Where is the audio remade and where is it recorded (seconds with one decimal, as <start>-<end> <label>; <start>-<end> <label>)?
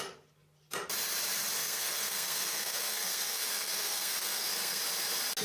0.0-1.6 recorded; 1.6-4.8 remade; 4.8-5.4 recorded